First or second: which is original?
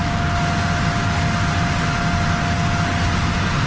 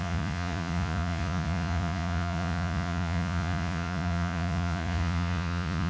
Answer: first